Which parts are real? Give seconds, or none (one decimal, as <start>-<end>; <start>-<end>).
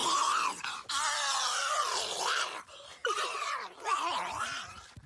0.9-3.0; 3.6-5.1